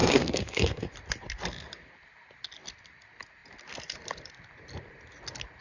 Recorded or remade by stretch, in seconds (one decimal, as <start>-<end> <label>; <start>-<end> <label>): 0.0-0.9 remade; 0.9-5.6 recorded